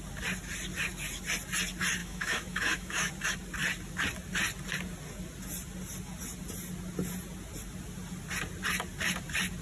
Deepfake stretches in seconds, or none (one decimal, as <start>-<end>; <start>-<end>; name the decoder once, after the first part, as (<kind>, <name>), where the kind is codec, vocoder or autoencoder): 2.0-3.1 (autoencoder, DAC-VAE)